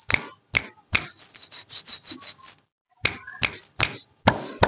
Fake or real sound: real